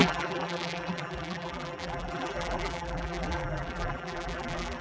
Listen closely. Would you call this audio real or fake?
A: fake